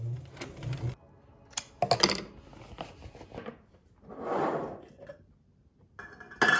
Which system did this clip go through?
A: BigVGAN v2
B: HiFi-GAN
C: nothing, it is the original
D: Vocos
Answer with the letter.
C